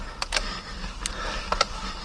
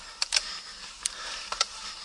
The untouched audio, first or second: first